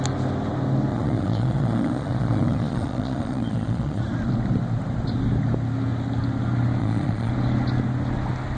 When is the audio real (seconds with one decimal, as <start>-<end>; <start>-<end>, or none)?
0.0-0.9; 4.0-6.8; 7.3-8.6